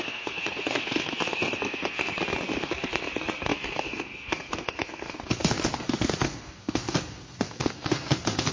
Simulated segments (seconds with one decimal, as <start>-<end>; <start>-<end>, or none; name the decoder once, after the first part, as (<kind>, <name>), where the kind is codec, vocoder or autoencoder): 0.0-2.1 (codec, SNAC); 2.6-8.5